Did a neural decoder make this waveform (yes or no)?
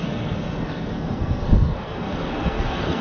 yes